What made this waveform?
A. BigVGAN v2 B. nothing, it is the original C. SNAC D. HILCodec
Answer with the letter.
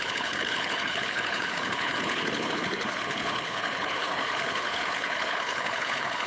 D